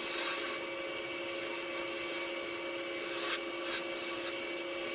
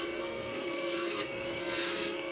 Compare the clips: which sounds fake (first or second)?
second